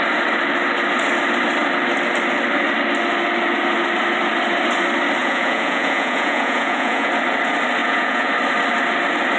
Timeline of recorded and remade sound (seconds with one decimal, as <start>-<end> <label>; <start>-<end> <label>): 0.0-5.2 recorded; 5.2-7.1 remade; 7.1-7.8 recorded; 7.8-8.3 remade; 8.3-9.4 recorded